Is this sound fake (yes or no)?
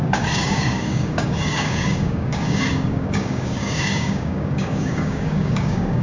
yes